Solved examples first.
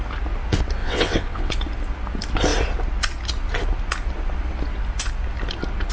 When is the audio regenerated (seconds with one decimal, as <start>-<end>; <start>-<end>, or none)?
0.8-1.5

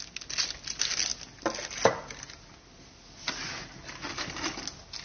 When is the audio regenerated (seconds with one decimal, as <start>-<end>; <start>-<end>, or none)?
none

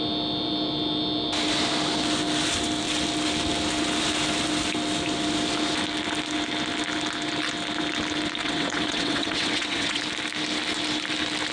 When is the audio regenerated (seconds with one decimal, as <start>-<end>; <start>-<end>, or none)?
8.4-10.0

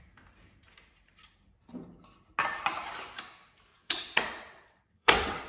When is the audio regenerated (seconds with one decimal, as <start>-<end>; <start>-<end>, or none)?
3.7-5.5

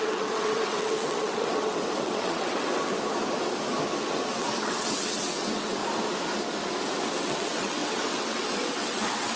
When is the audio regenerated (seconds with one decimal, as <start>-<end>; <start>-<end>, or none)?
0.0-2.9; 4.1-5.8; 7.2-9.4

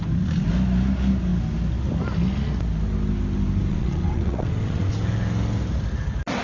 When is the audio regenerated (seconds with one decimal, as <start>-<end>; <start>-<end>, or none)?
3.7-4.9